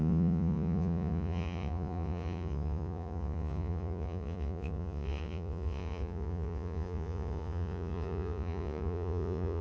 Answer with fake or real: fake